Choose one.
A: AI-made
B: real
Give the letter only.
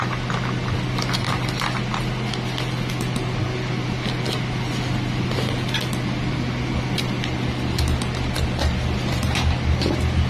B